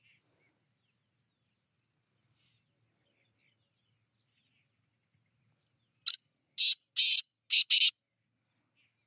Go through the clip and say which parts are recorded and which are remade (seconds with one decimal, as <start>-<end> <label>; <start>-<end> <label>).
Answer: 0.0-9.1 recorded